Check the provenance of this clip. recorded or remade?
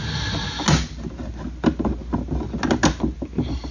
recorded